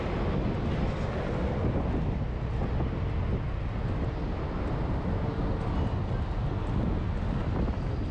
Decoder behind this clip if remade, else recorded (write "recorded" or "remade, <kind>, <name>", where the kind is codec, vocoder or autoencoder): recorded